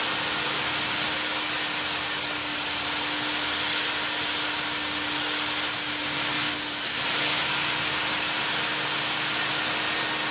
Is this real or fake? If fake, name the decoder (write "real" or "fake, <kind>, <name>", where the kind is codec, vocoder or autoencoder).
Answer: real